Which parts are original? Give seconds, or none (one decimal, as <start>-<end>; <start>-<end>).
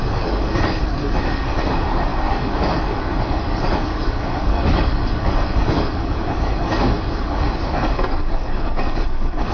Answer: none